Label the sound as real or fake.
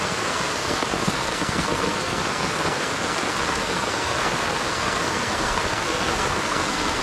fake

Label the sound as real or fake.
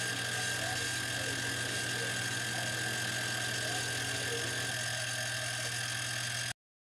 real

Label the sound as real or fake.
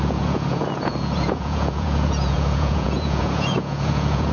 fake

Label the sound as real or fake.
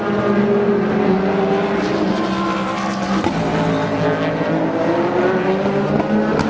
real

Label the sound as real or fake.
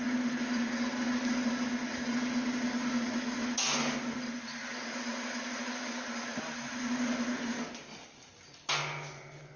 real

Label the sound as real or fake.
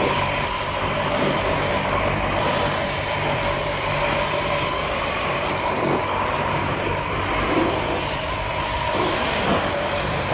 fake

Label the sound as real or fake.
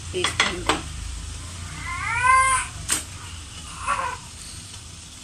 fake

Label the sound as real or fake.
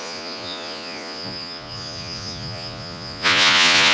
fake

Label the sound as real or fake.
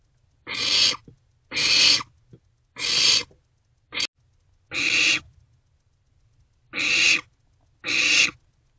real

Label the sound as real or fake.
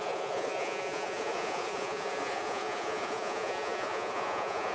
fake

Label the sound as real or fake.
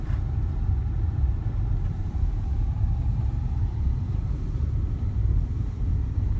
fake